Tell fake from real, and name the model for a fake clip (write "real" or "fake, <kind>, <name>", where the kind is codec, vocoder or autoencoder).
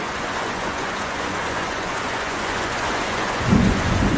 fake, vocoder, Vocos